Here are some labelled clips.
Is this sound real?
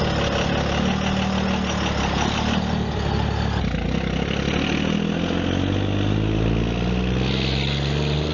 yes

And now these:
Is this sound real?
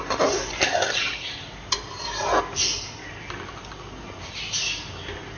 yes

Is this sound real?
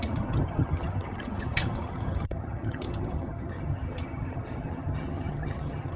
no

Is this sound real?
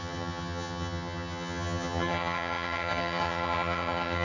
no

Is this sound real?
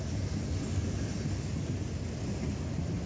yes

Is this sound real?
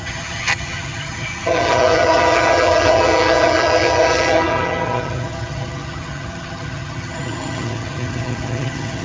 no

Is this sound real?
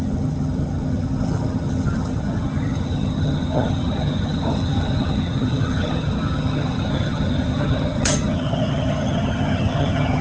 no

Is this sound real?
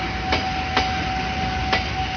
yes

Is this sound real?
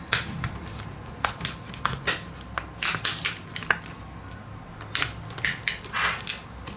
yes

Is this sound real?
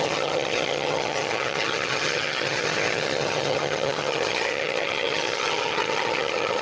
no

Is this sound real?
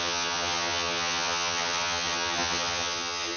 no